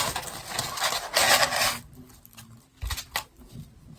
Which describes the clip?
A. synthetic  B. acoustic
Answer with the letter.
B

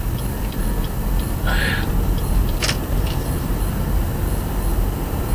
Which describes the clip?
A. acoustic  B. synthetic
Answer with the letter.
A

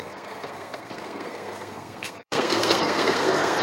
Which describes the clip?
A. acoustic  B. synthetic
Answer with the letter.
B